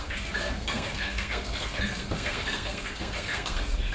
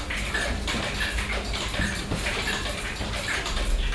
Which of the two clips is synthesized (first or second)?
first